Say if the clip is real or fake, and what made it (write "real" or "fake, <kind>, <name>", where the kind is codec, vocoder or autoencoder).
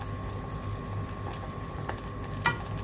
real